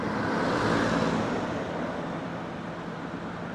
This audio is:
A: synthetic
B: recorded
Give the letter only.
B